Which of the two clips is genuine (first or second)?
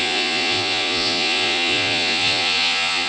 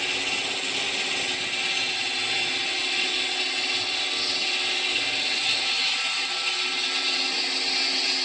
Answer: second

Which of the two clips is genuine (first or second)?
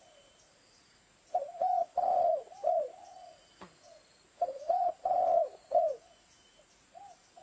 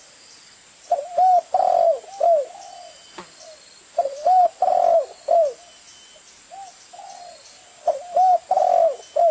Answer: second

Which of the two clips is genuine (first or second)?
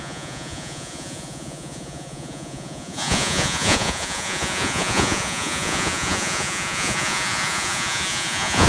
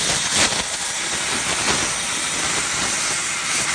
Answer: second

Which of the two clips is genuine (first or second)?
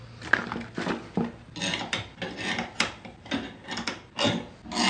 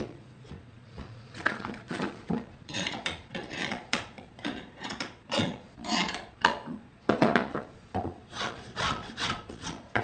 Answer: first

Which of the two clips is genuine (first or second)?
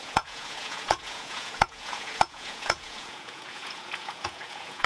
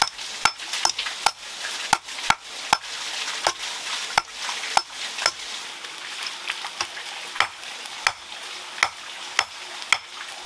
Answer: second